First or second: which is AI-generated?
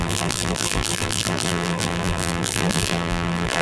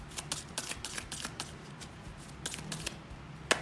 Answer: first